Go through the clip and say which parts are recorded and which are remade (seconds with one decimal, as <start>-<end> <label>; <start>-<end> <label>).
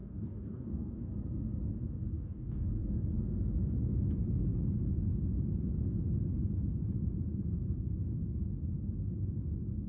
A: 0.0-1.1 remade; 1.1-2.1 recorded; 2.1-2.8 remade; 2.8-9.9 recorded